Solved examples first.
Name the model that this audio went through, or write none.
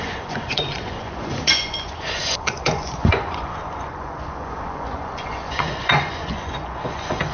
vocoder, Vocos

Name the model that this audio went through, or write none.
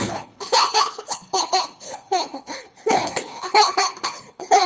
codec, HILCodec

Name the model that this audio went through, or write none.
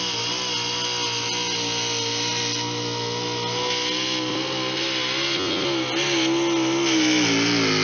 none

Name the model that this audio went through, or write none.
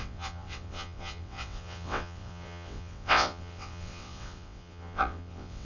vocoder, WaveNeXt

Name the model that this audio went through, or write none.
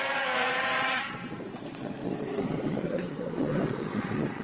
vocoder, Vocos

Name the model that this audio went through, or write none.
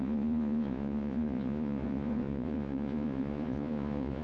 vocoder, Vocos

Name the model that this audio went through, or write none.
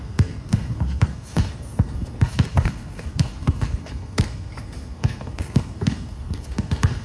codec, SNAC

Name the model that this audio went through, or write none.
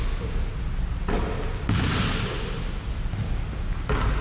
none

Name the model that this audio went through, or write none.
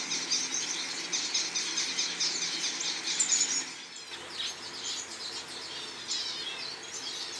none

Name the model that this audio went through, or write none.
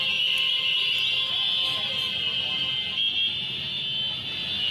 none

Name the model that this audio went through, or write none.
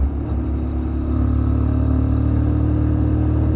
none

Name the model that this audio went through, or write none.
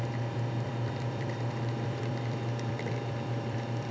vocoder, BigVGAN v2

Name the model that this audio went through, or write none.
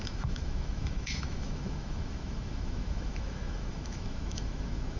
autoencoder, DAC-VAE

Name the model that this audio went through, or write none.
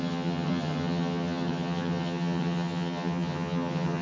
vocoder, HiFi-GAN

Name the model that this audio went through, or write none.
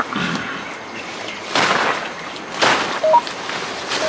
none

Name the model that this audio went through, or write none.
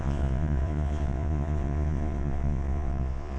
vocoder, Vocos